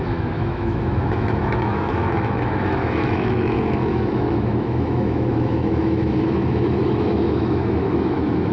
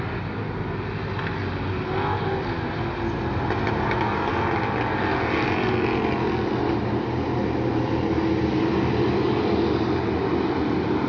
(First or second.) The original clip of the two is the second